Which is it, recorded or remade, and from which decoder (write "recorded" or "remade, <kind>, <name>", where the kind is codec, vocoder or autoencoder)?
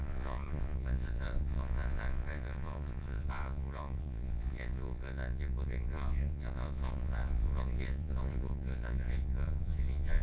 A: remade, vocoder, Vocos